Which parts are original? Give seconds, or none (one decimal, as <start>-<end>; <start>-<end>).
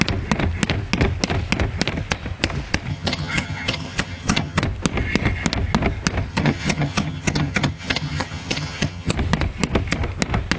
0.0-2.9; 4.6-6.3; 9.1-10.6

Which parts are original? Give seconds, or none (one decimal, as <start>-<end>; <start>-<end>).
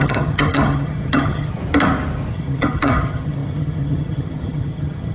1.6-2.3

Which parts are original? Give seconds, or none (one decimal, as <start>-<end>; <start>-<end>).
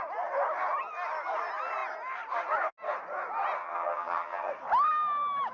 0.0-3.6; 4.5-5.5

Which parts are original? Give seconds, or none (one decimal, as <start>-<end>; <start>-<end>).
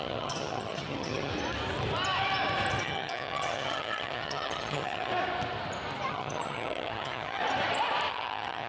1.3-2.8; 5.1-6.1; 7.4-8.1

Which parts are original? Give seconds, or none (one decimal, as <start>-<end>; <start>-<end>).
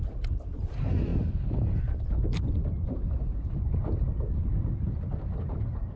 0.0-6.0